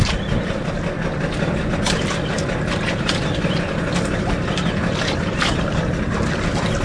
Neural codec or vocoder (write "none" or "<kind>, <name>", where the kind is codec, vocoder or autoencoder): vocoder, BigVGAN v2